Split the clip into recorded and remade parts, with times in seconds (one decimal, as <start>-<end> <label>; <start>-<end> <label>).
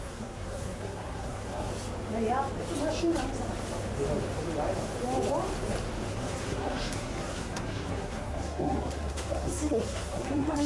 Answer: 0.0-1.7 remade; 1.7-6.1 recorded; 6.1-10.7 remade